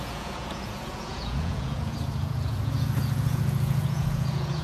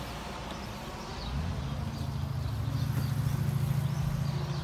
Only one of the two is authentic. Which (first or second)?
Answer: second